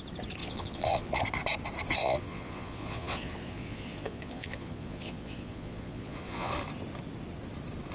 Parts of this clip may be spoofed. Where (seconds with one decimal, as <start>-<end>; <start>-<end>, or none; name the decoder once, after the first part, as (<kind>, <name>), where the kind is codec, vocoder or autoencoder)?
0.4-1.2 (vocoder, Vocos); 2.0-6.5